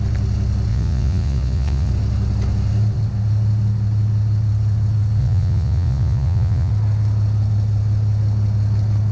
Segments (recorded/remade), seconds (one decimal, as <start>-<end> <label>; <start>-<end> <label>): 0.0-0.7 recorded; 0.7-1.9 remade; 1.9-5.2 recorded; 5.2-6.7 remade; 6.7-9.1 recorded